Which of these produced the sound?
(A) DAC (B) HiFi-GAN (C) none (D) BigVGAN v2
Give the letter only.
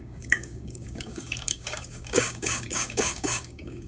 A